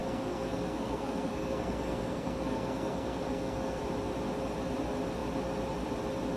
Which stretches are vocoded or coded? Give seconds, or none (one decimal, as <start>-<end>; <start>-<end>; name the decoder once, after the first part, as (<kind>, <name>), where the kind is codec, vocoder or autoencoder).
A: 0.0-3.8 (codec, SNAC)